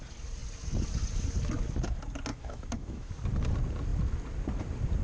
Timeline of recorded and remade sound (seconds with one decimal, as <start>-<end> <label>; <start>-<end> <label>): 0.0-2.3 recorded; 2.3-3.1 remade; 3.1-5.0 recorded